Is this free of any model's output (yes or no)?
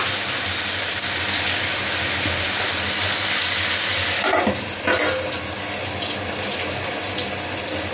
yes